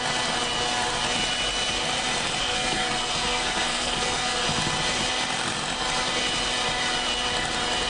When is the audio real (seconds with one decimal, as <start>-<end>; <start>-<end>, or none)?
0.0-2.4; 4.4-7.9